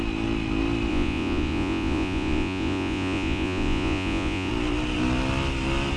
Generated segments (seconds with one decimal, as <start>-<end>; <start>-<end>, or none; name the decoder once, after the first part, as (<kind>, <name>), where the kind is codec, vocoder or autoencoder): 0.9-4.5 (vocoder, Vocos)